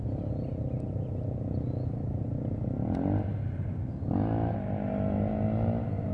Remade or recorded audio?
recorded